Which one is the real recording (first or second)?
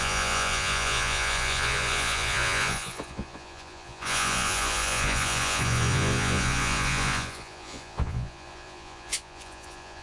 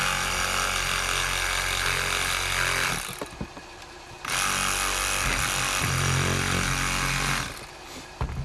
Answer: second